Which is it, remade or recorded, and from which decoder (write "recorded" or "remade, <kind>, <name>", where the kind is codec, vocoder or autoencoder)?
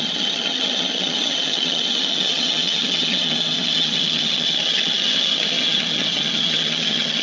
remade, vocoder, HiFi-GAN